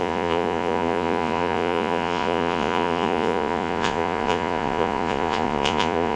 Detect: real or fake fake